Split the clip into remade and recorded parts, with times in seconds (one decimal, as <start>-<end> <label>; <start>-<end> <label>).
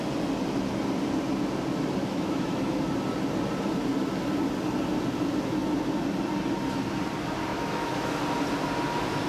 0.0-2.0 recorded; 2.0-2.8 remade; 2.8-7.5 recorded; 7.5-8.2 remade; 8.2-9.3 recorded